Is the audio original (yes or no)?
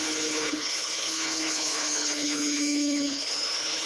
no